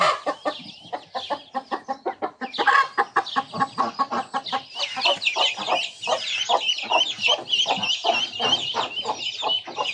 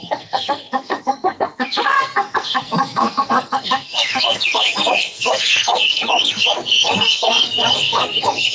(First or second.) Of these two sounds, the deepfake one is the second